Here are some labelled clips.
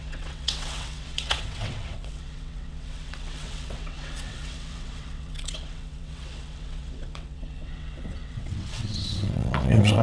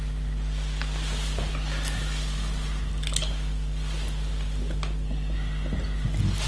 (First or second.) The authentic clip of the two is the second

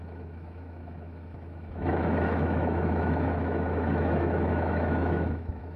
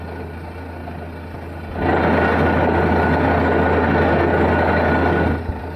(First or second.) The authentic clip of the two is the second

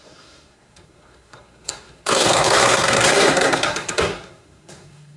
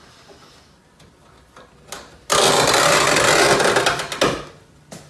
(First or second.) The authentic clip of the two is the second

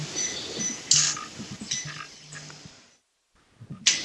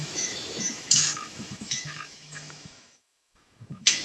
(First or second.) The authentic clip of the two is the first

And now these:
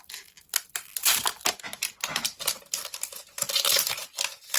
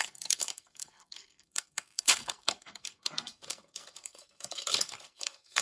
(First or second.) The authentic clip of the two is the first